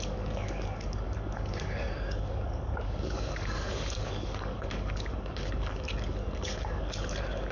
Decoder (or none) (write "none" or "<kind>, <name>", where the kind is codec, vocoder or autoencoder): codec, DAC